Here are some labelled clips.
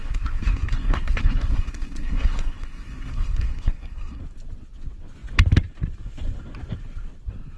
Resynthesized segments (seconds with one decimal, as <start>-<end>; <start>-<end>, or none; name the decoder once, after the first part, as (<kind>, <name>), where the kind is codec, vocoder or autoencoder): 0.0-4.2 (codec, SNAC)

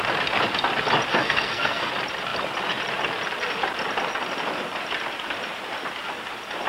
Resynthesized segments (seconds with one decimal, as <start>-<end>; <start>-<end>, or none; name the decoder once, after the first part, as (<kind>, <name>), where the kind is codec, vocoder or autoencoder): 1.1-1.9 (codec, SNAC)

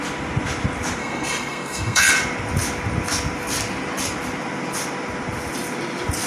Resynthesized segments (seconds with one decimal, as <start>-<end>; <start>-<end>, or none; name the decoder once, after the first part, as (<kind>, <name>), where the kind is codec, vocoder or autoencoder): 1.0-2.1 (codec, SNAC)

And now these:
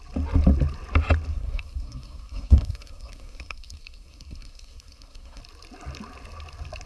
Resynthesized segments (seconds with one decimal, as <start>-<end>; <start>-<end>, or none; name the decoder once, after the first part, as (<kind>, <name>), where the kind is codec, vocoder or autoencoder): 1.3-5.4 (codec, SNAC)

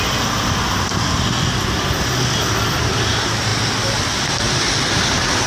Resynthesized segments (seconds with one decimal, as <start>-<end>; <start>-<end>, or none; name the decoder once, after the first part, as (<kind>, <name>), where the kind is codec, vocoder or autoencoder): none

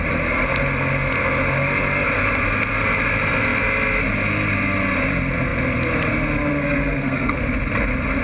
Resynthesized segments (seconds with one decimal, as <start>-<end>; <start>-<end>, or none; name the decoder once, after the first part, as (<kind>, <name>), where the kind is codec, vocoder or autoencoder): 6.5-7.4 (codec, SNAC)